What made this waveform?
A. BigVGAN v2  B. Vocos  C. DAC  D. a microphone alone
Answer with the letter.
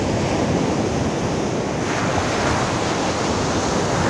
D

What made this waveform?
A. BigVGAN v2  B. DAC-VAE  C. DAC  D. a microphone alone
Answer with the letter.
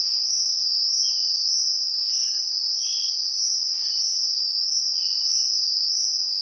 D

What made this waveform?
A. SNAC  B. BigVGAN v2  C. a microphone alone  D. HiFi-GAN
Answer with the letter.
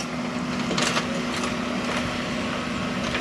C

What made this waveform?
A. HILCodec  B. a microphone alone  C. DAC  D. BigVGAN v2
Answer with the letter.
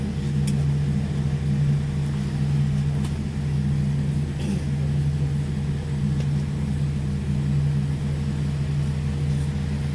B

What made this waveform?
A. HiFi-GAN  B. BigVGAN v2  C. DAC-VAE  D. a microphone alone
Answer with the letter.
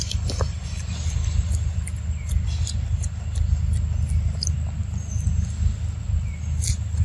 D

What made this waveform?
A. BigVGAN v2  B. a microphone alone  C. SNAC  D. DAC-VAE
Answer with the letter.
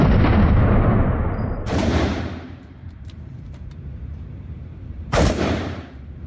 A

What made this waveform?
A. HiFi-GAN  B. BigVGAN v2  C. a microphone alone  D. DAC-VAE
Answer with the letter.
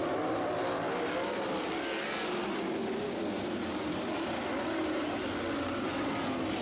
C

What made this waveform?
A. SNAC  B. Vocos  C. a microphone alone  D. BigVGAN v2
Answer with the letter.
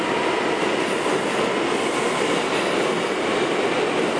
C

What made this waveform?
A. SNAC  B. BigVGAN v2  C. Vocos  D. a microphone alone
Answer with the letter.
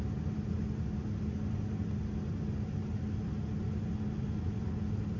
D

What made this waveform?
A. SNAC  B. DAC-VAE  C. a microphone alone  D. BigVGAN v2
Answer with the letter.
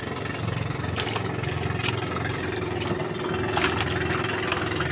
C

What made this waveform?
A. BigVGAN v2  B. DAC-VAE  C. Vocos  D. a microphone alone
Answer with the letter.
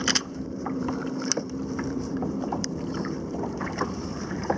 A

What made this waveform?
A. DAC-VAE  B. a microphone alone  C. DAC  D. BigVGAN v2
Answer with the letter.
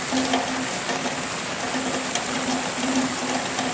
B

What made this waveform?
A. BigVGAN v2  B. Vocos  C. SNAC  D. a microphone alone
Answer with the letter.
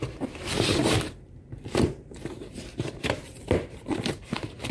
A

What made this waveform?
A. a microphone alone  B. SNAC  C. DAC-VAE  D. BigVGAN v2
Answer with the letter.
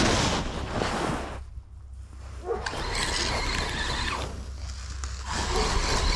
A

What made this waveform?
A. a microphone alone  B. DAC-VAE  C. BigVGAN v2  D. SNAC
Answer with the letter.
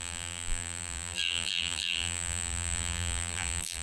C